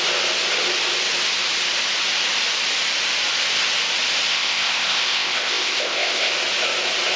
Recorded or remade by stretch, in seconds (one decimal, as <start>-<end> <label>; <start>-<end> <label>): 0.0-4.3 recorded; 4.3-6.3 remade; 6.3-7.2 recorded